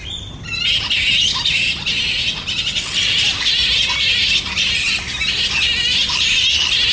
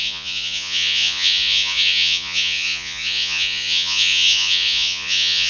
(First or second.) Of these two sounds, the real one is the first